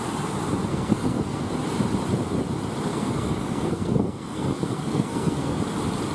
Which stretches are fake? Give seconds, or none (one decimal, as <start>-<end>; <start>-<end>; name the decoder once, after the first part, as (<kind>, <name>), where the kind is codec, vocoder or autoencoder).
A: 0.7-1.5 (codec, SNAC); 2.9-5.6